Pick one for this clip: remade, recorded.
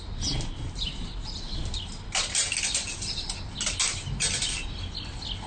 recorded